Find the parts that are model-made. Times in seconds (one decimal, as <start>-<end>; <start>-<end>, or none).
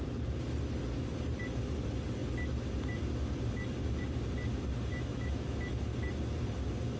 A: 4.9-5.6